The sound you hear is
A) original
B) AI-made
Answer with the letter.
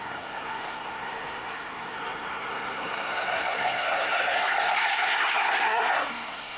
B